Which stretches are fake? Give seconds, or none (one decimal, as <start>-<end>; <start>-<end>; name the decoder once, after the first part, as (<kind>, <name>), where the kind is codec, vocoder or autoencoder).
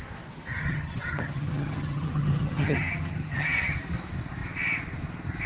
0.5-3.8 (vocoder, HiFi-GAN)